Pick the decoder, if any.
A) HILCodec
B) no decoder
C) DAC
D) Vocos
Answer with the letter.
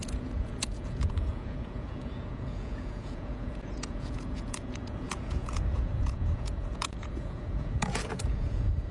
D